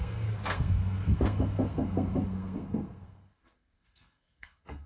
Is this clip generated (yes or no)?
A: yes